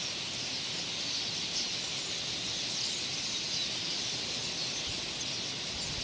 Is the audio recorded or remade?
recorded